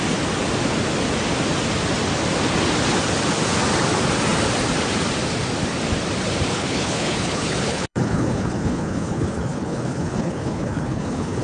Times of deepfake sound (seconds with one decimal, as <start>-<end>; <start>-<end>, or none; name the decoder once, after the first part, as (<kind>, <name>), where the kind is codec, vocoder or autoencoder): 6.5-11.4 (codec, HILCodec)